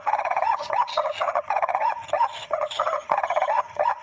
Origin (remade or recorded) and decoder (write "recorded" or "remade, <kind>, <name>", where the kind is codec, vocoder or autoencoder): remade, vocoder, HiFi-GAN